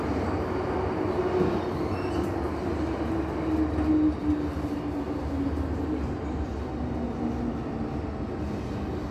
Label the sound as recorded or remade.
recorded